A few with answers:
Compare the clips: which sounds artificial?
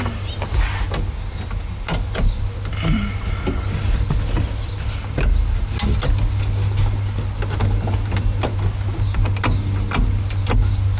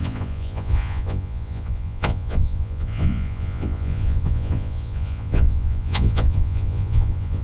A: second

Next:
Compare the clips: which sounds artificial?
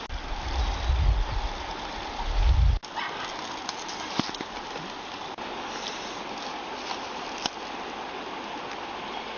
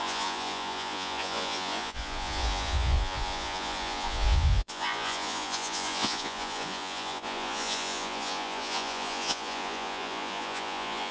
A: second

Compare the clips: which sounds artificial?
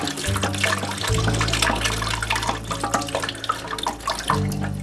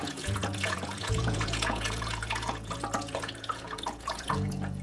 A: second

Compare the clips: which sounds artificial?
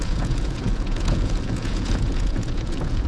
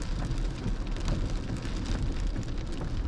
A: first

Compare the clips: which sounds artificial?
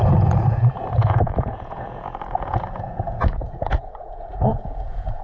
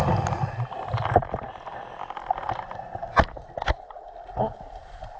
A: first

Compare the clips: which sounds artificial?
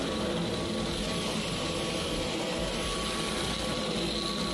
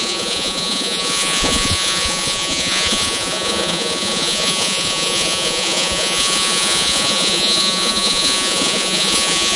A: second